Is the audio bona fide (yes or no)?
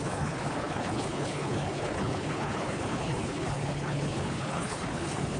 no